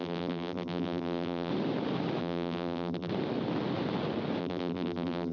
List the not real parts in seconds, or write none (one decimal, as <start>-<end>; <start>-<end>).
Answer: 0.0-1.5; 2.2-3.1; 4.4-5.3